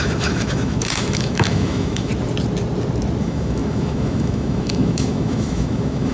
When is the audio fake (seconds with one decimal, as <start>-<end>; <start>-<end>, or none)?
0.0-2.1; 3.2-6.1

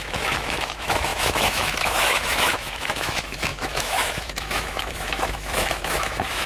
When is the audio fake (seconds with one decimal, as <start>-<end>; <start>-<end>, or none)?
0.0-6.5

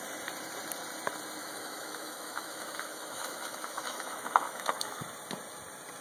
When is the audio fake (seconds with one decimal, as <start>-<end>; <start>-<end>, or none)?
1.4-5.0

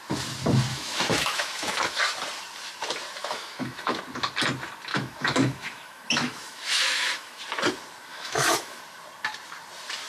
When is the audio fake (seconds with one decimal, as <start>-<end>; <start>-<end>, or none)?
0.7-2.0; 3.2-4.0; 4.9-7.4; 8.1-8.8

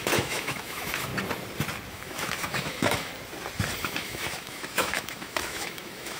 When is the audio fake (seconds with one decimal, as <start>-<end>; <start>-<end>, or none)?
0.0-1.1; 1.9-3.1; 3.8-6.2

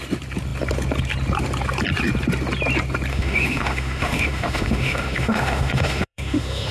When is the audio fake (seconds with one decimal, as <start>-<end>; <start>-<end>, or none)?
3.1-6.7

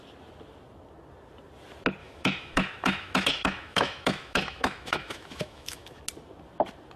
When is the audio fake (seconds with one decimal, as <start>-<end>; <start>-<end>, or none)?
2.0-6.0

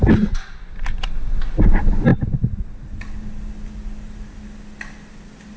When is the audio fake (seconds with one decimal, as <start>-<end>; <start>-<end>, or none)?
none